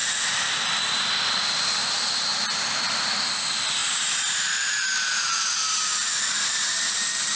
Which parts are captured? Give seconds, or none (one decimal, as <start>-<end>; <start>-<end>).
0.9-2.3; 3.3-7.4